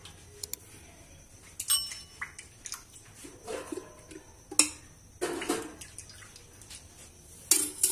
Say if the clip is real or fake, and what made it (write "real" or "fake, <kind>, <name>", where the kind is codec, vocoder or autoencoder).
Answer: real